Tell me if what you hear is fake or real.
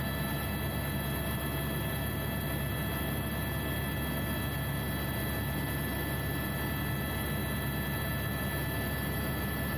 real